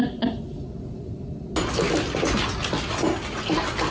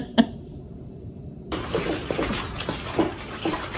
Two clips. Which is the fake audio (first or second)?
second